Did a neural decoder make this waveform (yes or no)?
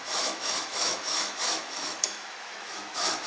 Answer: yes